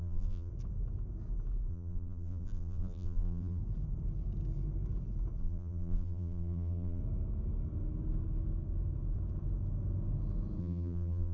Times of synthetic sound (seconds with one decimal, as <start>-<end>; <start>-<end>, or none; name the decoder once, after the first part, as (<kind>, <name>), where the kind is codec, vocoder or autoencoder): 0.0-0.5 (vocoder, BigVGAN v2); 1.7-3.6; 5.4-7.0; 10.6-11.3